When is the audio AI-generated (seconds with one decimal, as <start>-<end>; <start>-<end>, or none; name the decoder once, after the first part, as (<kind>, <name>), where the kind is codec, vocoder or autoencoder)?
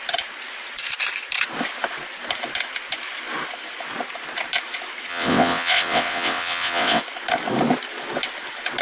5.1-7.0 (vocoder, WaveNeXt)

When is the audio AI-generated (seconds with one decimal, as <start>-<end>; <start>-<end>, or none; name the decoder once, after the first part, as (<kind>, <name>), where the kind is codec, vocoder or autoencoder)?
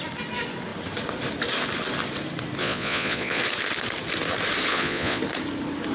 2.6-3.4 (vocoder, Vocos); 4.7-5.2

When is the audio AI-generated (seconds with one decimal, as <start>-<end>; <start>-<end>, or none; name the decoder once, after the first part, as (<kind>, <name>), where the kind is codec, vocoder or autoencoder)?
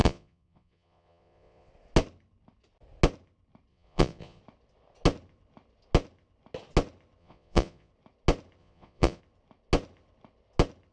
0.0-1.7 (vocoder, Vocos); 3.7-4.4; 7.2-7.9; 8.6-9.2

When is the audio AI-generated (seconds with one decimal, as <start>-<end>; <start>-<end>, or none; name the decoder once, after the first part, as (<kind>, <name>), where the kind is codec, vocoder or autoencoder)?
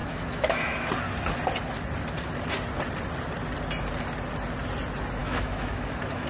0.0-0.9 (autoencoder, DAC-VAE); 5.2-6.3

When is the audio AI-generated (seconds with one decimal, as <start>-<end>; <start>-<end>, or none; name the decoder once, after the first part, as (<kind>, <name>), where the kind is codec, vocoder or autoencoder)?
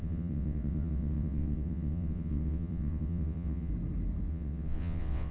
0.0-3.7 (vocoder, WaveNeXt); 4.3-5.3